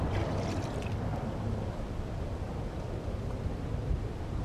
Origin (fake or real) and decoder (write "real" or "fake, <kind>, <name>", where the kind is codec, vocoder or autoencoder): fake, vocoder, BigVGAN v2